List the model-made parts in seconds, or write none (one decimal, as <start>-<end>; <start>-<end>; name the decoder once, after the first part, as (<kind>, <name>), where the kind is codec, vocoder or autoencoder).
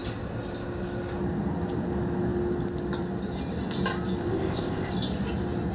4.2-4.9 (codec, ZipCodec)